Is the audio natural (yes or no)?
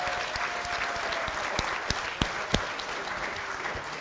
yes